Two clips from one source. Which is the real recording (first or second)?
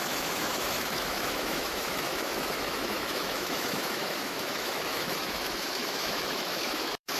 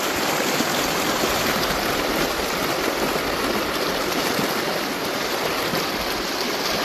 second